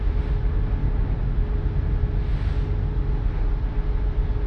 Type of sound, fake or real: real